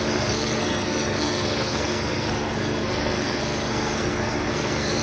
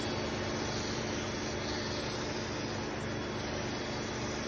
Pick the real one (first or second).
second